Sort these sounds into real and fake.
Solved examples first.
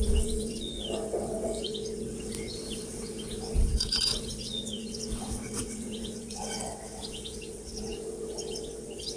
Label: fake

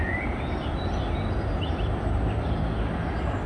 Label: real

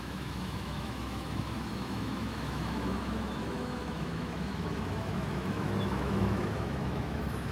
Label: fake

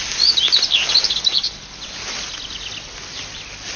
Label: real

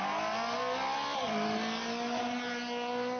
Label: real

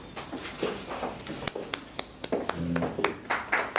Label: real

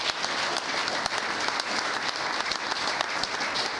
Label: real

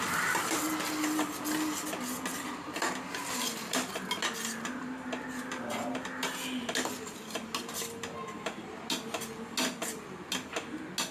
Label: real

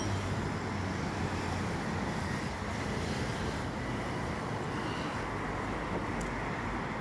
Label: real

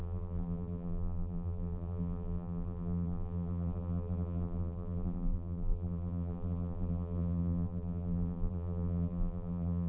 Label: fake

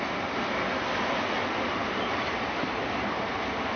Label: real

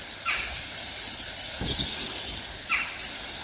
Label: real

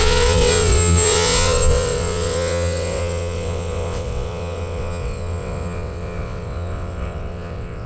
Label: fake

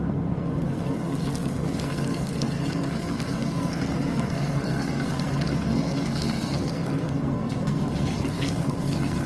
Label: fake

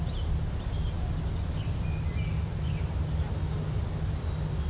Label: real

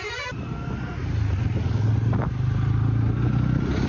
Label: real